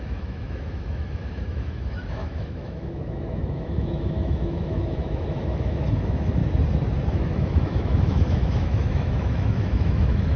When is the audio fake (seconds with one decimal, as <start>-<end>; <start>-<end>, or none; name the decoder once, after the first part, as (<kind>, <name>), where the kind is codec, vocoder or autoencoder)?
0.0-6.4 (autoencoder, DAC-VAE); 7.1-10.4